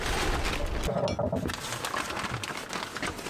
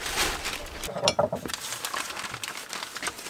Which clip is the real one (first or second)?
first